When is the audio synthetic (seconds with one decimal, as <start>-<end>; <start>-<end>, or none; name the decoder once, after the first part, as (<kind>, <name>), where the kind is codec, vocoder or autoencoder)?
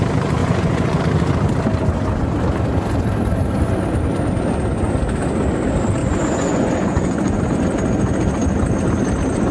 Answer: 0.4-1.0 (vocoder, Vocos); 6.0-7.4